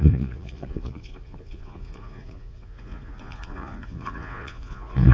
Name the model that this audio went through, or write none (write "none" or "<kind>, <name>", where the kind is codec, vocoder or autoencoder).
vocoder, Vocos